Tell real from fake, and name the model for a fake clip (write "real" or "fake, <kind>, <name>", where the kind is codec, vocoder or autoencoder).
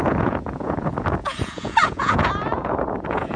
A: fake, vocoder, Vocos